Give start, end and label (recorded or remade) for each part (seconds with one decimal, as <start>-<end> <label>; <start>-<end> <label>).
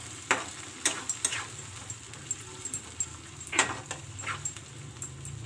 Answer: 0.0-5.5 recorded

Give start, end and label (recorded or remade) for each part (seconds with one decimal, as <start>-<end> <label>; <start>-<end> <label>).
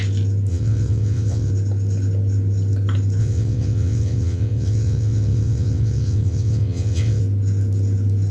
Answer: 0.0-0.5 recorded; 0.5-1.5 remade; 1.5-3.2 recorded; 3.2-7.2 remade; 7.2-8.3 recorded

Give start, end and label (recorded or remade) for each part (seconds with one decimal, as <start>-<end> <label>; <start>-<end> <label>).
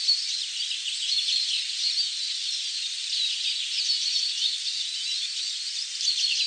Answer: 0.0-6.5 recorded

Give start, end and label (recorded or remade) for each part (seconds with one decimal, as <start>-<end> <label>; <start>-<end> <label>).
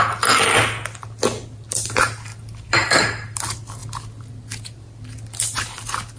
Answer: 0.0-6.2 recorded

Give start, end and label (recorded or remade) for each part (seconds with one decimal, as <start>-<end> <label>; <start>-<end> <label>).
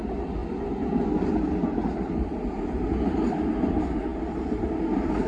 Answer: 0.0-5.3 recorded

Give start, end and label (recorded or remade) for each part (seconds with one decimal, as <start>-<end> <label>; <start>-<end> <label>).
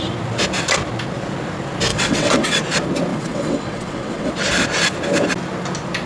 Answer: 0.0-1.9 recorded; 1.9-2.6 remade; 2.6-3.1 recorded; 3.1-4.3 remade; 4.3-6.1 recorded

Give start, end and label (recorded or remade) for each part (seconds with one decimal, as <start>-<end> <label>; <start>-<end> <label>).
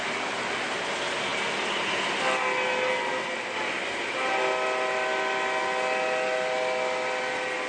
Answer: 0.0-7.7 recorded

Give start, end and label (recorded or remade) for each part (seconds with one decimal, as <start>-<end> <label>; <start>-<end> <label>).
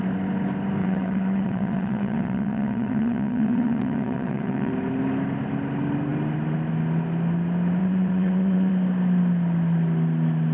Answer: 0.0-0.8 recorded; 0.8-4.7 remade; 4.7-7.8 recorded; 7.8-8.7 remade; 8.7-10.5 recorded